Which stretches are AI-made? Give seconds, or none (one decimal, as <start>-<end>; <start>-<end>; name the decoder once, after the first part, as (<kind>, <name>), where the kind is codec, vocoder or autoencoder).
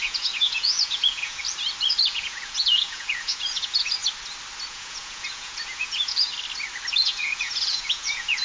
0.0-1.4 (vocoder, Vocos); 2.1-4.0; 4.7-6.3; 6.9-8.4